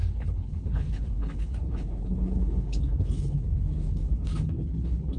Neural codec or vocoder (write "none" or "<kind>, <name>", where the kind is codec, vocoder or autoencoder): codec, HILCodec